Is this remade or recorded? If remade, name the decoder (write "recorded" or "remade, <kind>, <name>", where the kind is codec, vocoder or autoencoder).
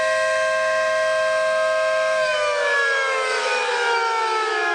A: remade, autoencoder, DAC-VAE